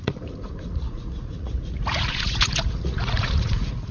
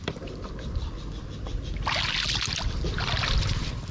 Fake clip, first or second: first